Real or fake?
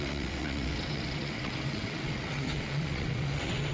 fake